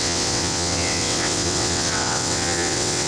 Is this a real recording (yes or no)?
no